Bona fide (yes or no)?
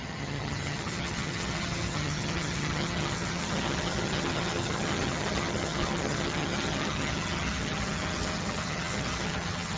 no